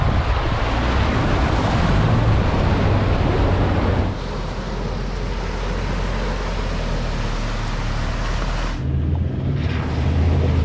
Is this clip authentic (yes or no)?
yes